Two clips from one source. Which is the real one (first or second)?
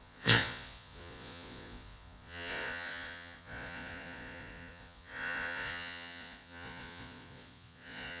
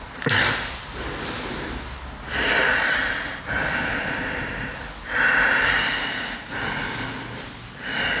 second